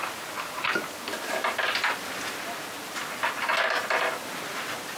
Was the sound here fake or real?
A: real